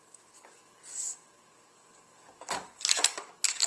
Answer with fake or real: fake